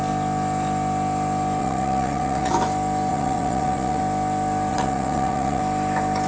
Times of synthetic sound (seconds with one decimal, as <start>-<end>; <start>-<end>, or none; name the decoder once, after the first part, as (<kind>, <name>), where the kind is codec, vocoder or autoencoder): 1.6-2.5 (vocoder, WaveNeXt); 3.1-4.0; 4.7-5.6